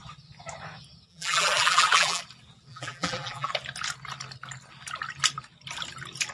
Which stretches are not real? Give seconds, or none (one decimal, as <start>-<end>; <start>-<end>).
1.1-2.2; 2.7-3.5